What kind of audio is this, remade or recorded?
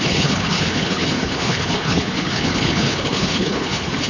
remade